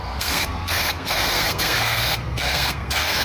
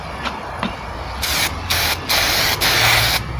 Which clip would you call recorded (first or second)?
second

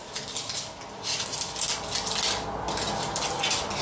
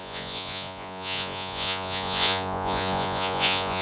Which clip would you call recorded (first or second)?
first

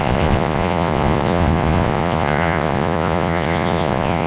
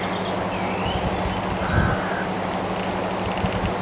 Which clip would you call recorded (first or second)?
second